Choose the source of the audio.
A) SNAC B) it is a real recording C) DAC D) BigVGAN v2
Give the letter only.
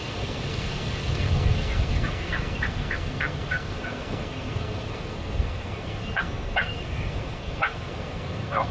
A